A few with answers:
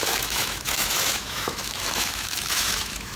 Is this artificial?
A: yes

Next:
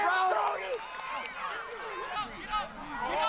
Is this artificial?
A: no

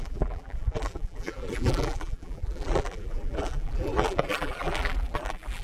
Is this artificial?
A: yes